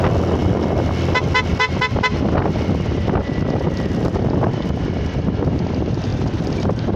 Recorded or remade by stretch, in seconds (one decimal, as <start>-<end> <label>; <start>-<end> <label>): 0.0-0.4 recorded; 0.4-0.9 remade; 0.9-6.1 recorded; 6.1-6.6 remade; 6.6-7.0 recorded